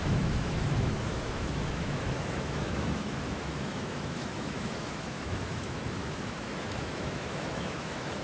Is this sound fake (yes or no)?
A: yes